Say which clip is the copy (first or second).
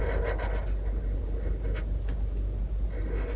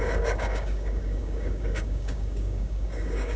second